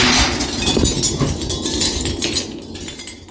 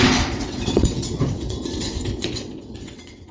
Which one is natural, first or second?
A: first